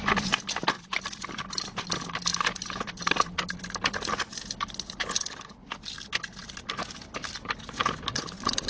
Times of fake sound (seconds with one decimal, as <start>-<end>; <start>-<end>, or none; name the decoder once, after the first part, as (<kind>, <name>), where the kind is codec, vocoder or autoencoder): none